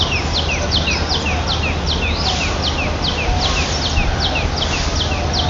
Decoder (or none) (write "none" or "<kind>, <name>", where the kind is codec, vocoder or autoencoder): none